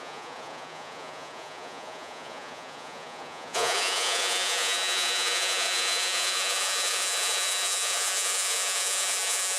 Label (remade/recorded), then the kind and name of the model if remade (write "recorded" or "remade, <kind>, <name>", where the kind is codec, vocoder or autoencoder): remade, vocoder, Vocos